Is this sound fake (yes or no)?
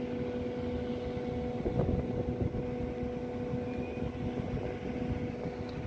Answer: no